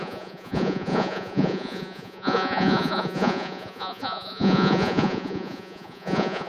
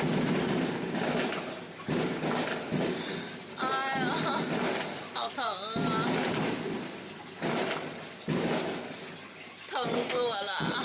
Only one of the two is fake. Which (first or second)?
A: first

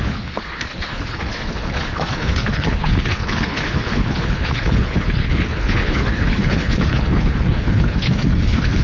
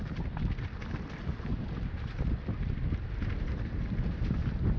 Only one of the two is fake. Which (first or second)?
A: first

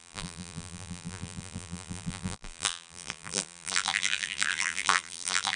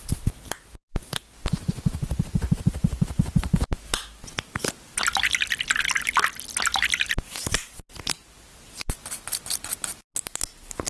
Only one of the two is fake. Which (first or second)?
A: first